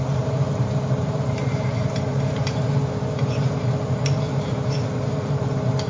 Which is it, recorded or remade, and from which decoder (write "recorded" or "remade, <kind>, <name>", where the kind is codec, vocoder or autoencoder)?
remade, vocoder, BigVGAN v2